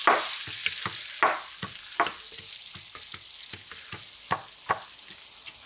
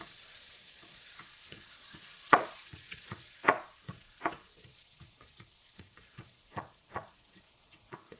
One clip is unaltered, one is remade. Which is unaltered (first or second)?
first